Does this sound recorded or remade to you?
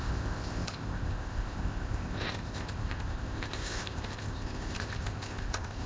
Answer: remade